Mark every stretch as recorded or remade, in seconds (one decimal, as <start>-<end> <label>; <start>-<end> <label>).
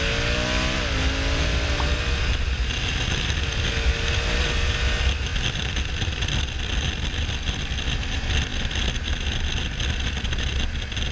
0.0-11.1 recorded